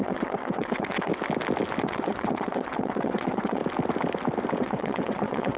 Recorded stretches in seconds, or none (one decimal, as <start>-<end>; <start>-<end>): 1.1-1.8; 3.6-4.6